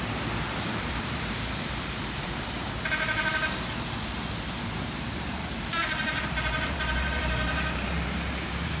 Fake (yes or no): yes